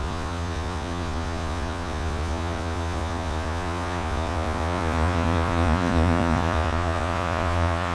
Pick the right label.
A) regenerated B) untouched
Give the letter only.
A